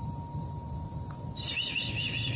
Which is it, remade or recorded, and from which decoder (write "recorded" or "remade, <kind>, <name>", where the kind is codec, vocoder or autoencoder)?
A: remade, vocoder, BigVGAN v2